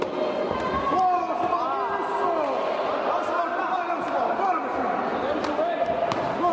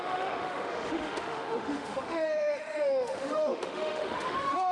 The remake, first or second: second